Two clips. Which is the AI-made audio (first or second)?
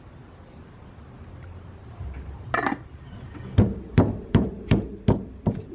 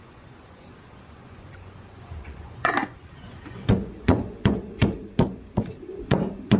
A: second